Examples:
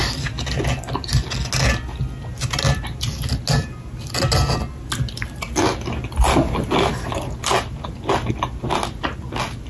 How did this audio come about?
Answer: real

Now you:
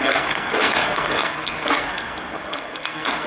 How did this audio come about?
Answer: fake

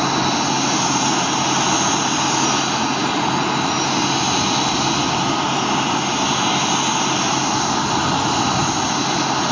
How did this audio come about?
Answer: real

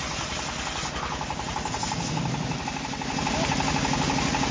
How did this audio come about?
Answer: real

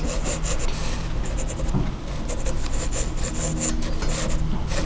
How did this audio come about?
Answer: real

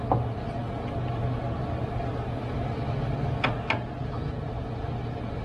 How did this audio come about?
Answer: real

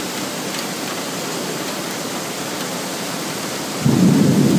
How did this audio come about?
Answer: real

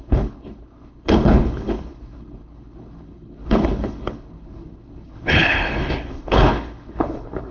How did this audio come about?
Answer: fake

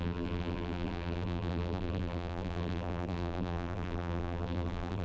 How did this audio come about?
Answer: fake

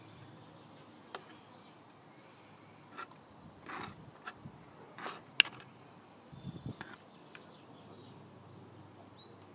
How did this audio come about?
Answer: real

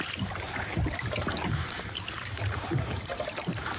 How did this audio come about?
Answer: fake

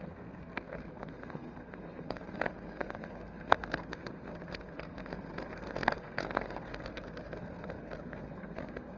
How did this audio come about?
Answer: fake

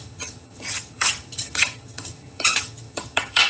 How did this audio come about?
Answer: fake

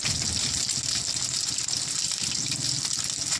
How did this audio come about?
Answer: real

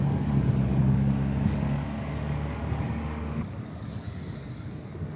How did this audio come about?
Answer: fake